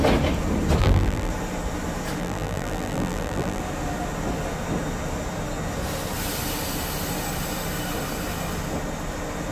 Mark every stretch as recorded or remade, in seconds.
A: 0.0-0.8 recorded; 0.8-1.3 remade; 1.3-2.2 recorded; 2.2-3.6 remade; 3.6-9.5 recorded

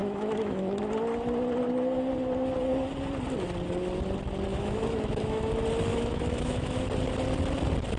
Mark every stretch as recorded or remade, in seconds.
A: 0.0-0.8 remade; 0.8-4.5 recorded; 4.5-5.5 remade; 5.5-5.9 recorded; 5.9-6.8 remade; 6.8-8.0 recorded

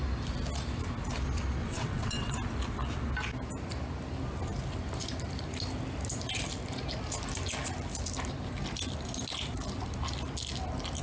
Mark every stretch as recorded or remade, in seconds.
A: 0.0-1.6 recorded; 1.6-2.3 remade; 2.3-11.0 recorded

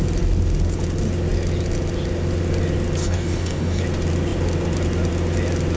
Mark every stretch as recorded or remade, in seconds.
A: 0.0-3.0 recorded; 3.0-3.8 remade; 3.8-5.8 recorded

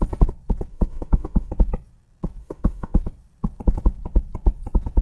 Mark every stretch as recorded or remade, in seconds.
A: 0.0-0.7 recorded; 0.7-1.5 remade; 1.5-2.4 recorded; 2.4-3.0 remade; 3.0-5.0 recorded

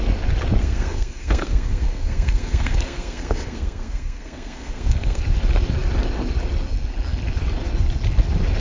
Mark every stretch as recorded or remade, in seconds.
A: 0.0-0.6 recorded; 0.6-5.2 remade; 5.2-8.6 recorded